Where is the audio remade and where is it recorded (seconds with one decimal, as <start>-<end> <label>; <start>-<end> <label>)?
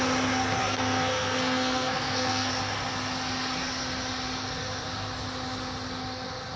0.0-0.6 recorded; 0.6-2.5 remade; 2.5-6.6 recorded